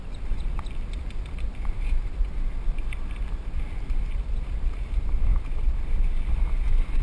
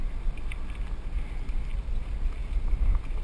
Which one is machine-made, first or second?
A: first